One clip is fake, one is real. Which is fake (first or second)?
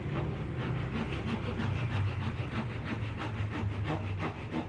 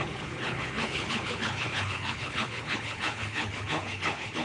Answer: second